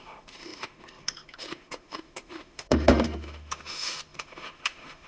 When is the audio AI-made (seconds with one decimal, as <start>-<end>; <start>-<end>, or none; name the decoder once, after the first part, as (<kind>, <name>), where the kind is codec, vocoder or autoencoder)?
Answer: 0.0-5.1 (autoencoder, DAC-VAE)